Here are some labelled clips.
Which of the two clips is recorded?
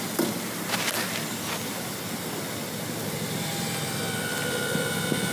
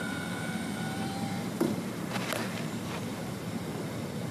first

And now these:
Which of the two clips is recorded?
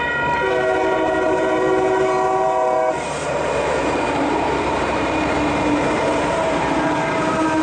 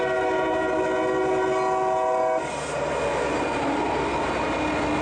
second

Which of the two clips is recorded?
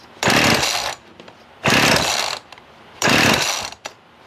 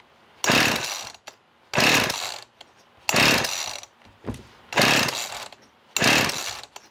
second